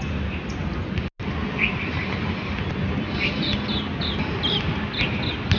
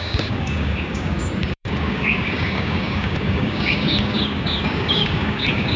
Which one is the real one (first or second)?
first